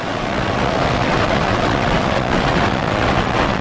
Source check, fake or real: fake